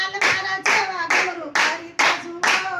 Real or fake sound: real